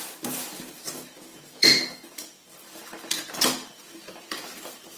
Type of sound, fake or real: fake